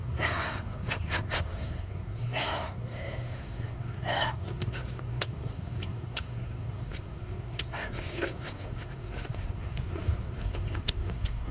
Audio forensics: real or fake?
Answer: fake